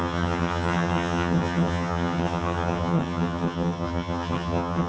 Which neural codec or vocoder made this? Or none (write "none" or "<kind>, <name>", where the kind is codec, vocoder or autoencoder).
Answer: vocoder, HiFi-GAN